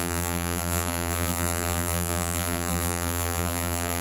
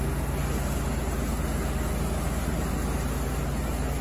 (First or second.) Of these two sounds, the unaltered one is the second